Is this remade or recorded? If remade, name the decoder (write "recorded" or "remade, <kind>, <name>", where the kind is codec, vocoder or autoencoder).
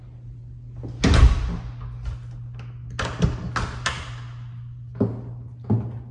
recorded